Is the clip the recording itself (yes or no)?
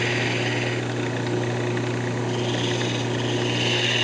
yes